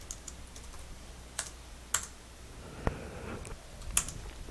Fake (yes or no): no